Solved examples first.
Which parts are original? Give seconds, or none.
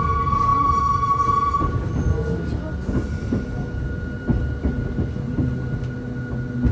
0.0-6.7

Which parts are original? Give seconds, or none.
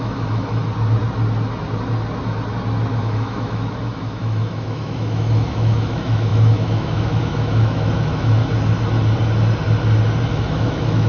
0.6-3.0; 8.4-10.3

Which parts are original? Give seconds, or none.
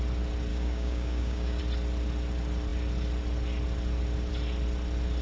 0.0-0.5; 1.6-5.2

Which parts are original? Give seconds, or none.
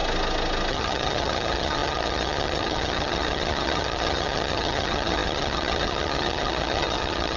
0.0-0.7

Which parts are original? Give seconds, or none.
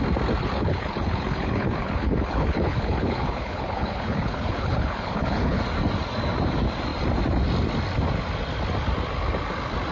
0.0-0.4; 5.6-9.9